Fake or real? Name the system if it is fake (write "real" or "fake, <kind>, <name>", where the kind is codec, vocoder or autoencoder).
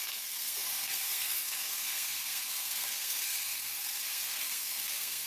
fake, codec, SNAC